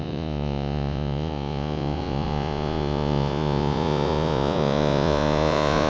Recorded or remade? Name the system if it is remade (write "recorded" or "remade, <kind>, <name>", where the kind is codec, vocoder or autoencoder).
remade, vocoder, Vocos